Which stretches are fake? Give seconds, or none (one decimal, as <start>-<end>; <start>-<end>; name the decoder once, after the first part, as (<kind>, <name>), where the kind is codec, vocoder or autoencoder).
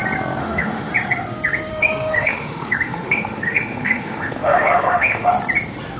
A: 0.4-0.9 (autoencoder, DAC-VAE); 1.7-5.3